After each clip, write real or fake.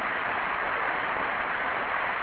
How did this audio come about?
real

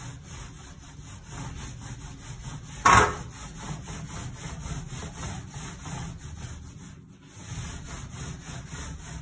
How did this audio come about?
real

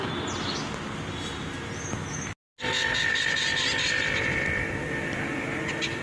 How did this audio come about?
real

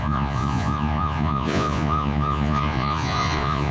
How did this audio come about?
fake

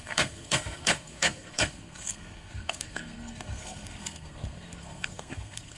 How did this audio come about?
fake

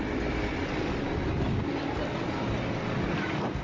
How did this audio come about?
real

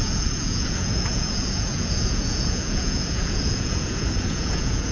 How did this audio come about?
fake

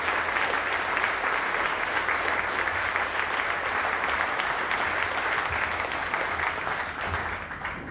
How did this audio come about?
real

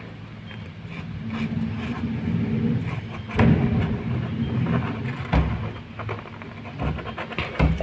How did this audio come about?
real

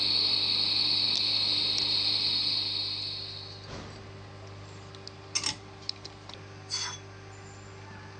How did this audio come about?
real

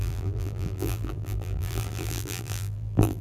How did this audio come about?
fake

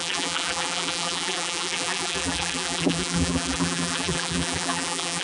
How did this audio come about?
fake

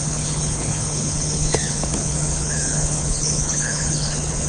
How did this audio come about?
fake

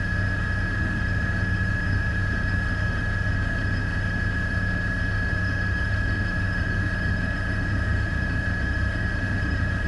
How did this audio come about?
fake